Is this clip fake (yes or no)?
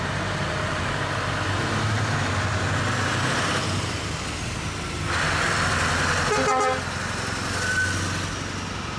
no